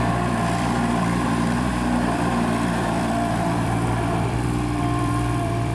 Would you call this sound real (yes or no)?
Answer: no